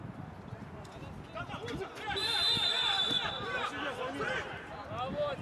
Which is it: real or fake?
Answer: real